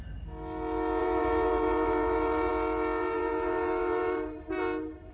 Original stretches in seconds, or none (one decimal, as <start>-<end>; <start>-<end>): 0.0-1.0; 2.5-3.0